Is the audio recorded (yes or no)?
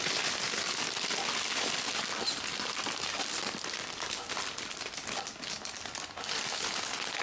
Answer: yes